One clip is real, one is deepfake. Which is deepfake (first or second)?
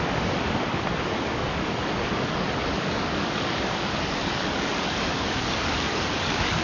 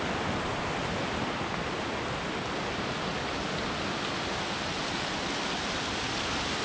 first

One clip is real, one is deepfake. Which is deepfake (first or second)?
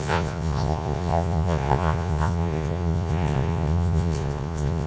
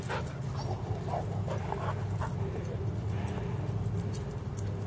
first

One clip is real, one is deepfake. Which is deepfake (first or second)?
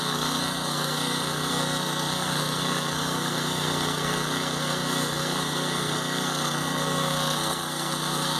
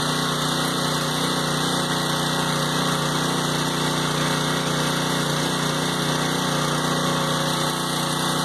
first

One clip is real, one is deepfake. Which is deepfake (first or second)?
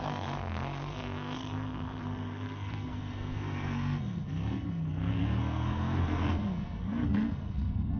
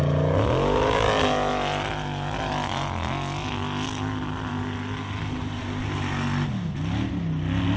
first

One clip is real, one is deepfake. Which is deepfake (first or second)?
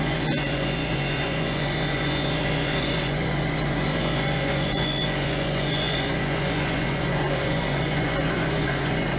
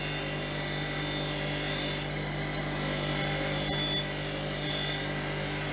first